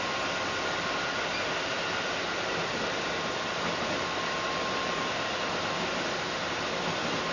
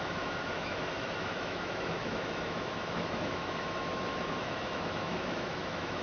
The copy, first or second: second